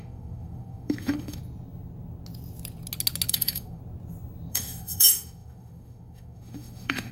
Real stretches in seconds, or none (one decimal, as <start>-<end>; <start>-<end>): 1.4-3.3; 3.8-4.5

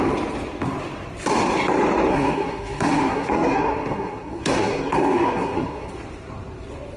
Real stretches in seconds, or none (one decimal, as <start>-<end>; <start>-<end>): 0.0-2.1; 5.9-7.0

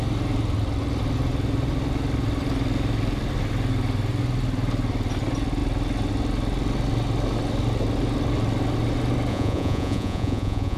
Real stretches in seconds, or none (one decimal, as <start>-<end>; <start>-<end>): 0.0-9.3

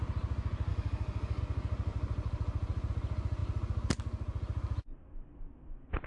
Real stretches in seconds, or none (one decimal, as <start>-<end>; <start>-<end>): 0.0-0.7; 1.4-6.1

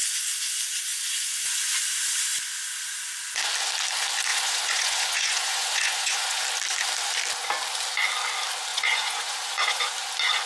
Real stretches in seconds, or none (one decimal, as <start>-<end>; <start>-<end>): 0.0-0.9; 1.8-4.3; 6.4-8.7; 9.9-10.5